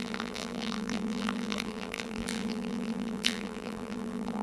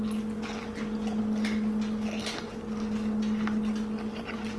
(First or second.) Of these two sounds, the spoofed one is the first